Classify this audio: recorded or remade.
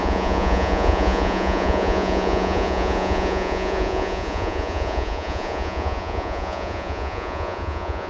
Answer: remade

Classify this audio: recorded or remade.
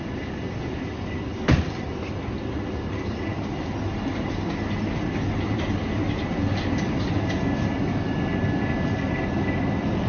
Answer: recorded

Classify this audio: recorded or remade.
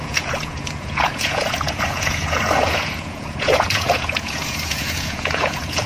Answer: remade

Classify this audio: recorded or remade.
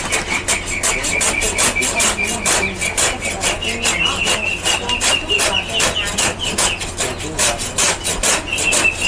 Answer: recorded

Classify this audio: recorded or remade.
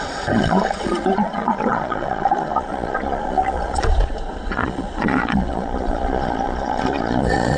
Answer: remade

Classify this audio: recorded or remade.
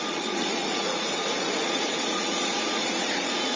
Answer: remade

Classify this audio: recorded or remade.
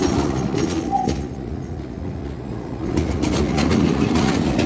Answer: remade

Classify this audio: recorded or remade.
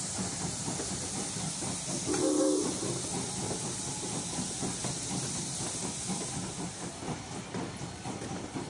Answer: recorded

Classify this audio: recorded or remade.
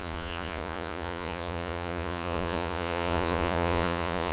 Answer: remade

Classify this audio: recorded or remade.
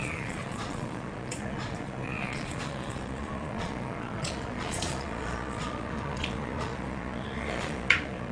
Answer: remade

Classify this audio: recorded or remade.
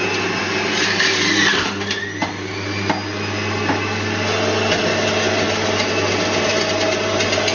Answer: recorded